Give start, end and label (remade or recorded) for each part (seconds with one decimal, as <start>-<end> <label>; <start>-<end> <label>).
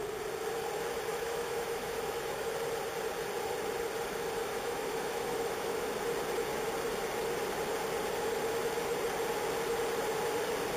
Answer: 0.0-1.1 recorded; 1.1-2.4 remade; 2.4-4.4 recorded; 4.4-5.9 remade; 5.9-10.8 recorded